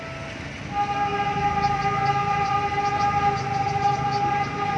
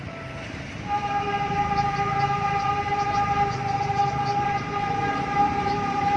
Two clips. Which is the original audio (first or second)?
first